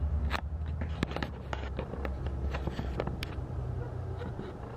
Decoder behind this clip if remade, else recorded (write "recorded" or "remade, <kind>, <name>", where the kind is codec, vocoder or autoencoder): recorded